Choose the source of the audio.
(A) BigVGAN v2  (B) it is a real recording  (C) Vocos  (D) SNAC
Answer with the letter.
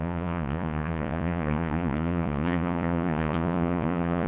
C